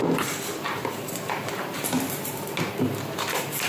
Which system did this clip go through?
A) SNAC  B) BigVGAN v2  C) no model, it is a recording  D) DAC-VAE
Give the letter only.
B